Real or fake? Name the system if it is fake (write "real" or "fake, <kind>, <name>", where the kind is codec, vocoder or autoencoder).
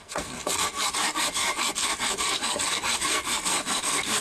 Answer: fake, codec, SNAC